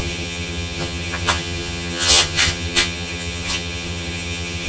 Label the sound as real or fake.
fake